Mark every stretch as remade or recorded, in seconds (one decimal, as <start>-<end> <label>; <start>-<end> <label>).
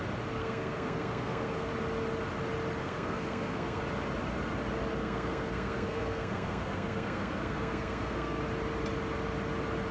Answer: 0.0-0.4 recorded; 0.4-1.7 remade; 1.7-2.8 recorded; 2.8-3.8 remade; 3.8-5.0 recorded; 5.0-8.4 remade; 8.4-9.9 recorded